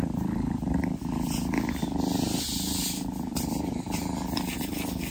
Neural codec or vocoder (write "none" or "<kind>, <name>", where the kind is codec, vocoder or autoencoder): none